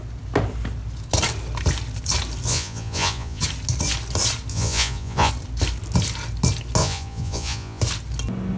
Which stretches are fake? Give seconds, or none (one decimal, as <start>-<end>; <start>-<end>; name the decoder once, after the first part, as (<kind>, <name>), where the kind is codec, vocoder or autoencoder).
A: 2.5-3.4 (vocoder, Vocos); 4.5-5.3; 6.8-7.8

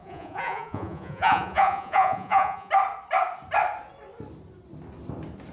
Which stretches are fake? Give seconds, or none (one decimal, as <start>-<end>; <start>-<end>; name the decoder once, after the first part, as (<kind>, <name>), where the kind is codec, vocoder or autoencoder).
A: 0.0-2.7 (vocoder, Vocos)

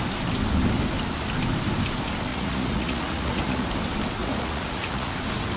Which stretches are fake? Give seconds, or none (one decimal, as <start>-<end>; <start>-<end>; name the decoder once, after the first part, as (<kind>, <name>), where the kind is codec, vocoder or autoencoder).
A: 2.3-3.7 (vocoder, Vocos); 4.2-5.1

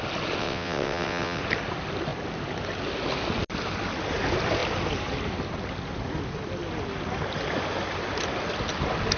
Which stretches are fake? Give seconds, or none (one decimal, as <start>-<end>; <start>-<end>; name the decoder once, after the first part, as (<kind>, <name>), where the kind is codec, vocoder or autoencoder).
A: 0.4-1.4 (vocoder, WaveNeXt)

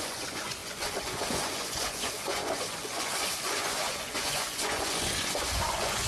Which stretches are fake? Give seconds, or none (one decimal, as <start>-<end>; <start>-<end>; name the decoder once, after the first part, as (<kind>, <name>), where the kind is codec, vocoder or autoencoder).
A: 0.0-6.1 (vocoder, Vocos)